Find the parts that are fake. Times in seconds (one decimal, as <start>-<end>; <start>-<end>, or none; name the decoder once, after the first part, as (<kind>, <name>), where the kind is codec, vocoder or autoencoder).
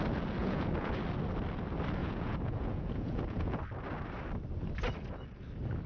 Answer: 0.4-0.9 (vocoder, Vocos); 2.0-3.6